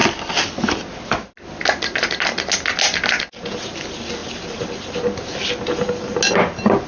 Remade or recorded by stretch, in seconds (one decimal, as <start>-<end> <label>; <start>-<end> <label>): 0.0-6.9 recorded